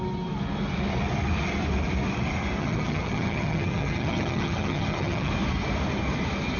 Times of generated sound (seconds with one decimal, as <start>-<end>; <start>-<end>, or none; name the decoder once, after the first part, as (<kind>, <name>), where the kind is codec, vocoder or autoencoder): 2.6-5.3 (vocoder, HiFi-GAN)